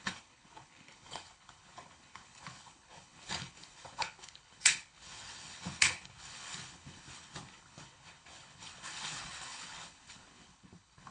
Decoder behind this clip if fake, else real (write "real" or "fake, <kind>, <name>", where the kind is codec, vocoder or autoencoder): fake, codec, HILCodec